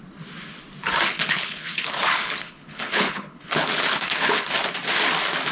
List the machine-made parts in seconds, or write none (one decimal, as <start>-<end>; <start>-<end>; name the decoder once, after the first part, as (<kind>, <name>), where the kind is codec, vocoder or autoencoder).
1.1-4.4 (codec, HILCodec)